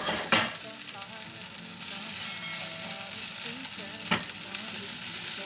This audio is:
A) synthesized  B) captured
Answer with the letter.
B